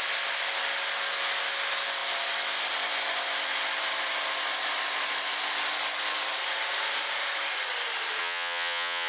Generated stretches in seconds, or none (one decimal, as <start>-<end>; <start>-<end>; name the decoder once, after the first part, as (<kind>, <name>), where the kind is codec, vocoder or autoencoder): 8.2-9.1 (vocoder, Vocos)